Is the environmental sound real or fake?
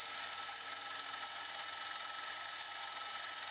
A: real